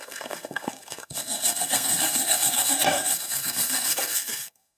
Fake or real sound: fake